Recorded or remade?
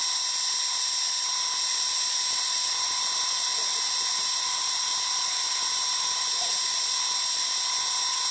recorded